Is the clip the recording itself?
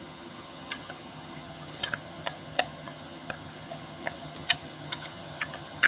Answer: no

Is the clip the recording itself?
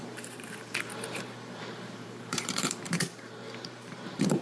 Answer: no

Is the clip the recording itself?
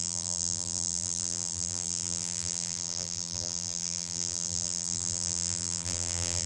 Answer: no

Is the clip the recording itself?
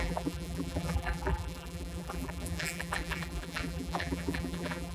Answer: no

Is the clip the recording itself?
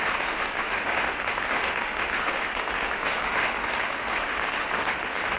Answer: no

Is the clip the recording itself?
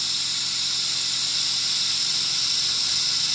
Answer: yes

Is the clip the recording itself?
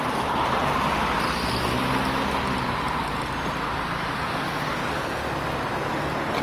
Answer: yes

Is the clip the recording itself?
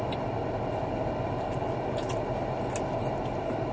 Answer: yes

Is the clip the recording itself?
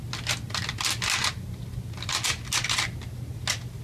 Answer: yes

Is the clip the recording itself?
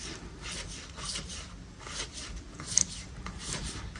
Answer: yes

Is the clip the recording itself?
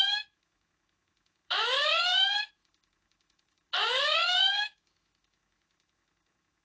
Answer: no